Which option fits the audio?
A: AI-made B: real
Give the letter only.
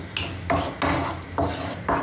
B